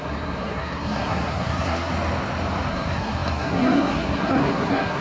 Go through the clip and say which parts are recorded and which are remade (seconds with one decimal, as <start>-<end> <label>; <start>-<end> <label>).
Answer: 0.0-1.9 remade; 1.9-2.7 recorded; 2.7-5.0 remade